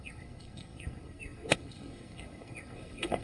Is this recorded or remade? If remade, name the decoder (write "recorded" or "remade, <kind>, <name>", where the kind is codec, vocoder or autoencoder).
remade, codec, SNAC